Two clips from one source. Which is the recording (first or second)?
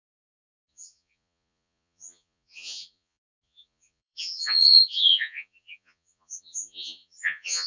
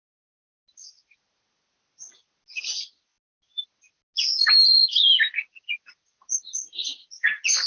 second